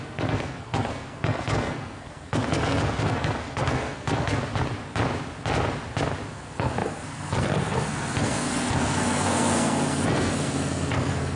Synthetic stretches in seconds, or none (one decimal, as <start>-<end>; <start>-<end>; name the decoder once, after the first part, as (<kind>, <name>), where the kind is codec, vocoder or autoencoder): 0.0-4.4 (codec, SNAC); 6.3-11.4